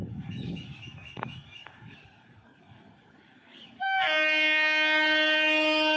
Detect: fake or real fake